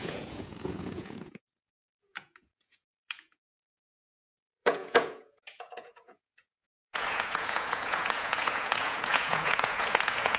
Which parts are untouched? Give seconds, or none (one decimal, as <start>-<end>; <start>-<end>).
none